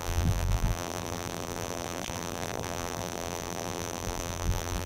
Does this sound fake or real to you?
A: fake